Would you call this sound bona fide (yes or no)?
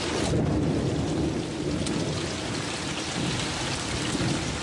yes